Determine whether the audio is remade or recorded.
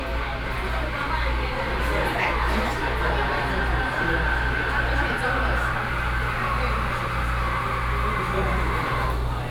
recorded